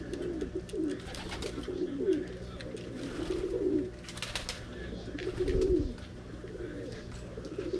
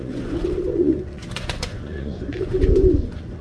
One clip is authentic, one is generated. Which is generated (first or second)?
second